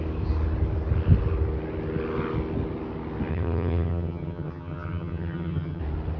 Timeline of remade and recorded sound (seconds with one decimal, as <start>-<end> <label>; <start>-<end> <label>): 0.0-3.3 recorded; 3.3-5.8 remade; 5.8-6.2 recorded